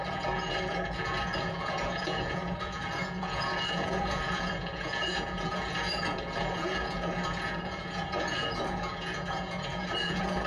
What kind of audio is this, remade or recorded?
remade